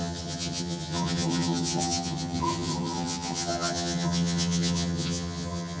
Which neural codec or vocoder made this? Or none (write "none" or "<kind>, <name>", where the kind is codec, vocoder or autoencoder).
vocoder, HiFi-GAN